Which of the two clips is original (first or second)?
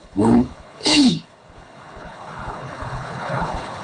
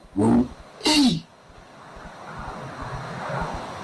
second